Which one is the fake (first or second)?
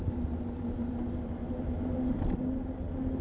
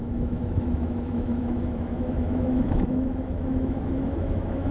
second